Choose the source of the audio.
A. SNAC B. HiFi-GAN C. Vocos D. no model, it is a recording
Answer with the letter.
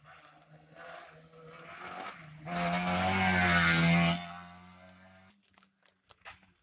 D